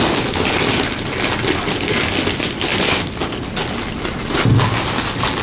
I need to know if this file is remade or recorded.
recorded